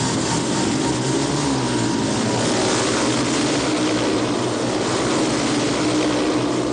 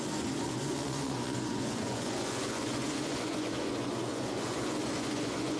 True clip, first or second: first